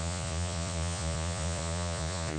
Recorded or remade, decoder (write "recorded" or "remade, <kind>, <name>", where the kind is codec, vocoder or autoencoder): remade, vocoder, Vocos